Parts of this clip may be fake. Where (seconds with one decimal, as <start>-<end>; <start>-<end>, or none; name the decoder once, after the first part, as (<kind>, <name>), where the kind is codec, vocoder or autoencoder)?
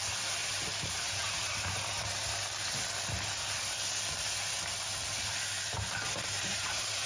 0.4-2.1 (vocoder, BigVGAN v2); 6.2-7.1